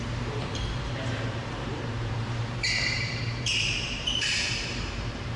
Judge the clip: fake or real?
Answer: fake